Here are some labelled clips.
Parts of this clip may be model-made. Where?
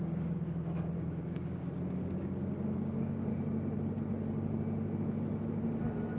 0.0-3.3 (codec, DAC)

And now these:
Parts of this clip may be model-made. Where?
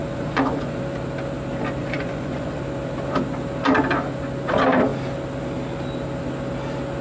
0.0-0.8 (vocoder, Vocos); 1.8-2.6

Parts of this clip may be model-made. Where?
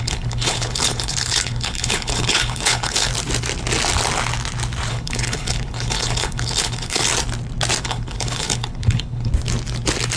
0.0-3.1 (codec, HILCodec); 4.9-7.1; 7.8-9.3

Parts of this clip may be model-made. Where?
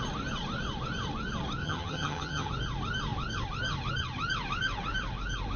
1.6-2.5 (vocoder, HiFi-GAN)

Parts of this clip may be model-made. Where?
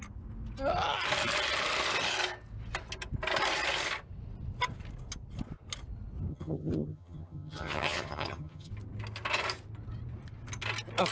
6.3-8.7 (vocoder, HiFi-GAN)